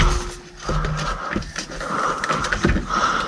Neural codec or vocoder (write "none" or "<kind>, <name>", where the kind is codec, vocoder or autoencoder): none